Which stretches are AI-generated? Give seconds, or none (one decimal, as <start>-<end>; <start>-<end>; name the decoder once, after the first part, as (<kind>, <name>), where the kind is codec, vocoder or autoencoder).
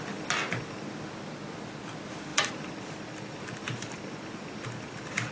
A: 2.3-5.3 (vocoder, BigVGAN v2)